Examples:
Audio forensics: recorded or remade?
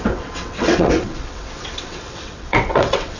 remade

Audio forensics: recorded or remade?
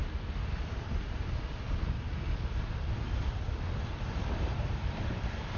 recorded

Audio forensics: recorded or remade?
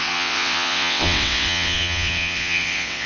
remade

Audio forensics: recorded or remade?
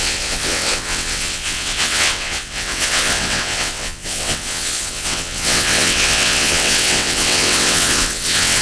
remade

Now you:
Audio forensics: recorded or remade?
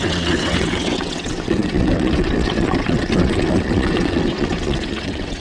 remade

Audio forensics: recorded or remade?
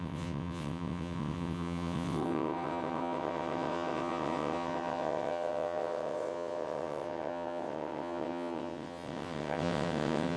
remade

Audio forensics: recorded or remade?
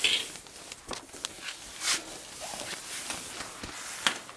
recorded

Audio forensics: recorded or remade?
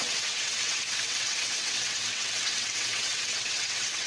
remade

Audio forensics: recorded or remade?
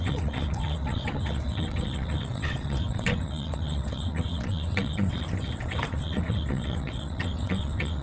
remade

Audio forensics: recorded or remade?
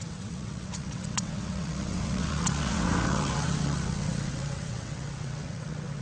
remade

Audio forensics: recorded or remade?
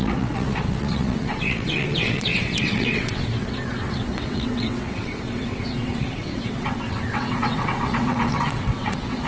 remade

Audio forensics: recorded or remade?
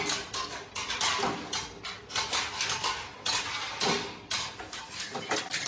recorded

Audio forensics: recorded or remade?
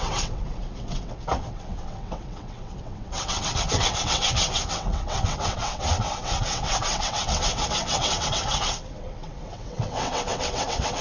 remade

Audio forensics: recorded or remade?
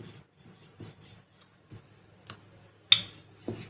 recorded